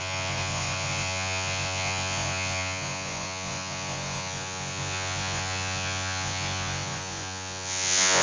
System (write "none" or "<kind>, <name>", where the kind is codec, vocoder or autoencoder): vocoder, Vocos